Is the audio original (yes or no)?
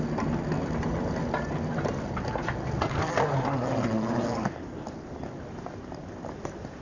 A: yes